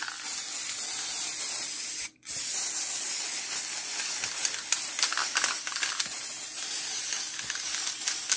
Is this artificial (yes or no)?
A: no